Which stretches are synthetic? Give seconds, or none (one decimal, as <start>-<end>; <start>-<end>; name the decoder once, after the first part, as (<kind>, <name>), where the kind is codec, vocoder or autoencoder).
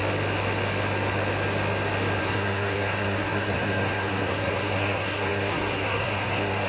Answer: 2.2-6.7 (codec, SNAC)